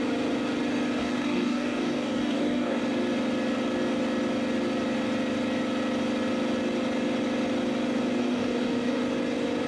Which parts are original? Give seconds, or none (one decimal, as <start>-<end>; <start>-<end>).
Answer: 0.0-1.0; 2.8-8.2; 9.0-9.7